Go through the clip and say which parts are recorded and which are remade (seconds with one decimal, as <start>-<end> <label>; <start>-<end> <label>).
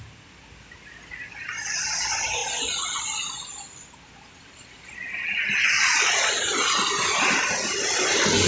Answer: 0.0-8.5 recorded